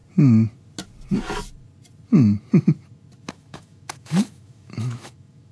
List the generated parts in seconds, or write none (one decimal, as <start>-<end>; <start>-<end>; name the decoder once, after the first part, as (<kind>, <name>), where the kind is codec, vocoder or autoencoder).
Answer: 3.3-5.5 (autoencoder, DAC-VAE)